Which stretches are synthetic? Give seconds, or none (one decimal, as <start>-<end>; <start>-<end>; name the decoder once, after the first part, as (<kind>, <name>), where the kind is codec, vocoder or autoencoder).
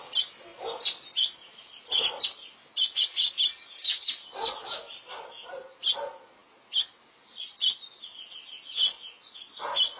none